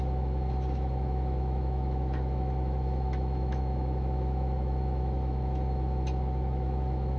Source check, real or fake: fake